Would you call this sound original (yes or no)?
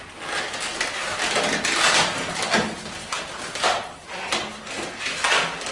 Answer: yes